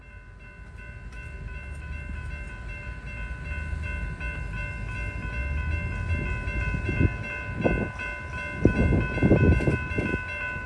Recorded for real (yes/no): yes